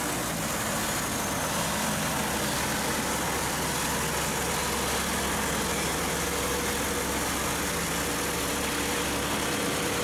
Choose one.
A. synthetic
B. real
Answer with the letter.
B